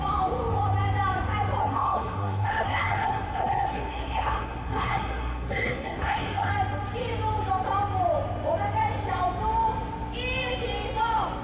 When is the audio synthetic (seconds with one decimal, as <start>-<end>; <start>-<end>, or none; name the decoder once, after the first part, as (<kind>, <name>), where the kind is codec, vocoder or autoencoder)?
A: 1.6-6.5 (codec, SNAC)

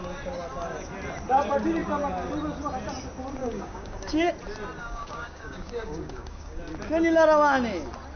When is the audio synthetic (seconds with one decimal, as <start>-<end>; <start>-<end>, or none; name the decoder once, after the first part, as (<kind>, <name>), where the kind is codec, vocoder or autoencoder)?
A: 3.4-4.3 (codec, DAC); 4.8-6.6

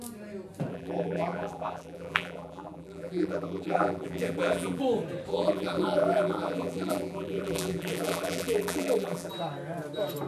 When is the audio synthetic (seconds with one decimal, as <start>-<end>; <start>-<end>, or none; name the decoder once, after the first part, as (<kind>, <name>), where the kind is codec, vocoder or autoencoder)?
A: 0.7-4.8 (vocoder, BigVGAN v2); 5.3-9.3

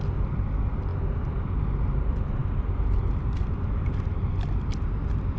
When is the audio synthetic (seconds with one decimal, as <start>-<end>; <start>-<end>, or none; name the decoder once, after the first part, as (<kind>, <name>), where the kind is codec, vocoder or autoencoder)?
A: none

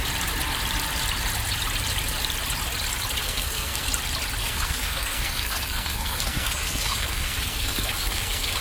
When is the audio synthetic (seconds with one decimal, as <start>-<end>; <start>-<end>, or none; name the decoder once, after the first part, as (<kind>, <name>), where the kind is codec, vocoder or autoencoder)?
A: 3.2-3.9 (codec, SNAC); 4.4-8.6

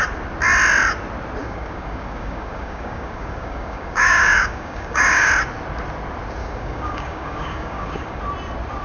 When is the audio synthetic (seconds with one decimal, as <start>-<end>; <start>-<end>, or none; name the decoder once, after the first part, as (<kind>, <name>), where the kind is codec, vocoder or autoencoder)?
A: 1.4-5.3 (codec, DAC); 6.4-8.2